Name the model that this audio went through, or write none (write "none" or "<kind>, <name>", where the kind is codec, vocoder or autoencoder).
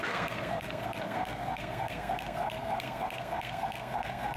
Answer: codec, SNAC